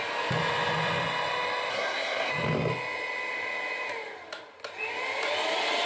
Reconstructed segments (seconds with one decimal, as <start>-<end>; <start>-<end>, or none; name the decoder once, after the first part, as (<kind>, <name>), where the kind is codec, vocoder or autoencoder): 1.7-2.3 (codec, SNAC)